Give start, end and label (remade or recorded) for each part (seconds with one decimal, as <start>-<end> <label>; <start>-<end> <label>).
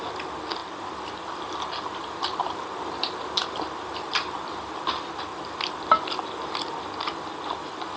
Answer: 0.0-0.6 recorded; 0.6-5.2 remade; 5.2-8.0 recorded